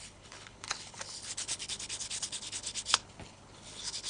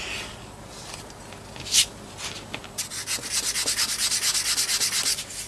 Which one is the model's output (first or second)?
first